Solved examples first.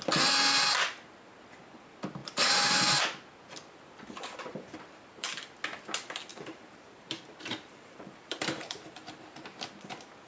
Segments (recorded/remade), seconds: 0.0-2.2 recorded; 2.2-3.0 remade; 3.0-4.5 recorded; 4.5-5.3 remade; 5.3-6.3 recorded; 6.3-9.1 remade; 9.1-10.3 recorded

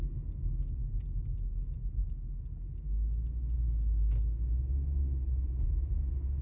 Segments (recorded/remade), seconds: 0.0-6.4 recorded

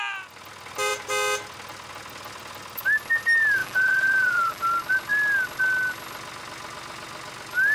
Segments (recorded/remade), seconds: 0.0-3.6 recorded; 3.6-4.6 remade; 4.6-7.7 recorded

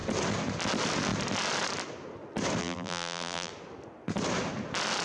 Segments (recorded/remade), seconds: 0.0-2.6 recorded; 2.6-3.5 remade; 3.5-5.0 recorded

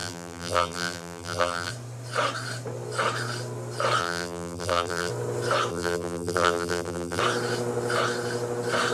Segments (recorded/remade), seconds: 0.0-1.7 remade; 1.7-4.0 recorded; 4.0-5.1 remade; 5.1-5.7 recorded; 5.7-7.2 remade; 7.2-8.9 recorded

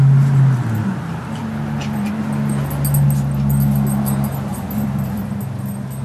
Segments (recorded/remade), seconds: 0.0-1.4 recorded; 1.4-2.1 remade; 2.1-4.5 recorded; 4.5-5.4 remade; 5.4-6.0 recorded

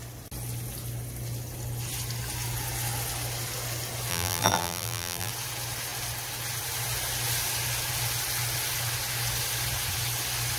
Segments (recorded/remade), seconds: 0.0-4.1 recorded; 4.1-5.3 remade; 5.3-10.6 recorded